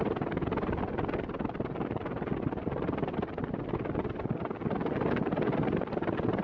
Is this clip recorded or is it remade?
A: recorded